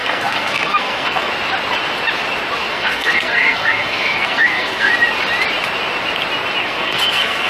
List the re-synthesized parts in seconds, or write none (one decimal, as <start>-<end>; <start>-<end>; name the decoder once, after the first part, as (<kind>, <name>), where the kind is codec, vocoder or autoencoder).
0.0-1.3 (codec, SNAC); 2.6-4.9; 6.6-7.5